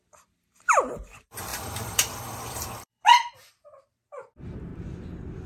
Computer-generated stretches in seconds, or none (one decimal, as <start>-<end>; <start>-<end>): 0.0-4.7